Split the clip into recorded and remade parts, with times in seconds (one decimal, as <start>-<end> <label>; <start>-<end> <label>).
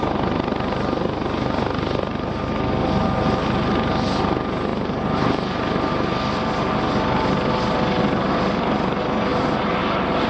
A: 0.0-10.3 recorded